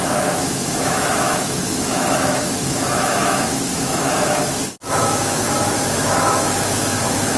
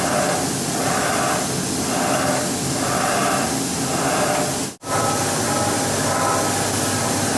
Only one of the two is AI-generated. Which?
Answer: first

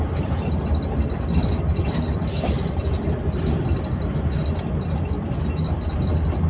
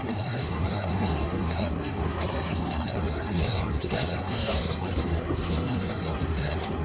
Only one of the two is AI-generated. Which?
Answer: second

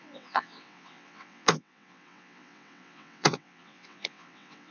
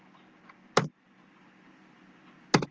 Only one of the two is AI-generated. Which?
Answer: first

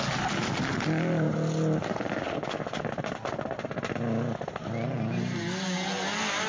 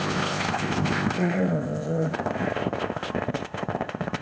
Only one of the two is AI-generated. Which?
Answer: second